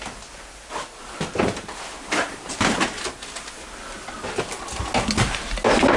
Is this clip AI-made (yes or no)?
no